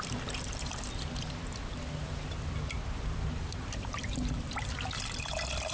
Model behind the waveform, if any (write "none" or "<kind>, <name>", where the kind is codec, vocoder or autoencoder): vocoder, BigVGAN v2